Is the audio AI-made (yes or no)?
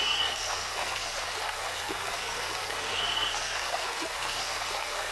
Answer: yes